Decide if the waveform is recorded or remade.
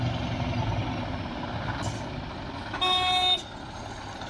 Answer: recorded